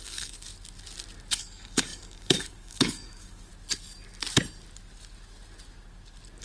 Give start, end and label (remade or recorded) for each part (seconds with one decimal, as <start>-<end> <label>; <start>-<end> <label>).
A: 0.0-0.5 remade; 0.5-1.3 recorded; 1.3-3.5 remade; 3.5-6.4 recorded